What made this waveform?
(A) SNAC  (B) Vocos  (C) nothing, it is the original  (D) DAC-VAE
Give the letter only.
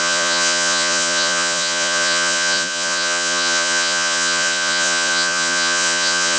B